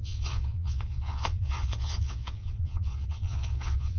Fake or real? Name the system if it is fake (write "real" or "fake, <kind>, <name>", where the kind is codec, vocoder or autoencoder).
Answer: fake, vocoder, Vocos